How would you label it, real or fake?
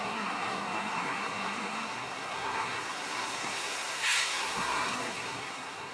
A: fake